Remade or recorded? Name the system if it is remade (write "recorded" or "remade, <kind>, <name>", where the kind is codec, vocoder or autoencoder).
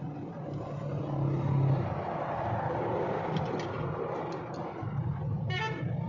recorded